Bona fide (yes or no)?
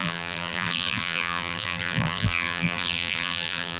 no